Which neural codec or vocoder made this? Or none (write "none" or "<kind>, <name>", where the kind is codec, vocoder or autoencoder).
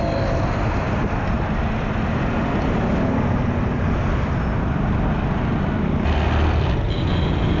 none